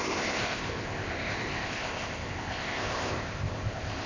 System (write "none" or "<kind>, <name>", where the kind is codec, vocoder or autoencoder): codec, ZipCodec